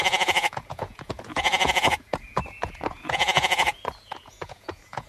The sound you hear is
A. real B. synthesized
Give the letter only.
B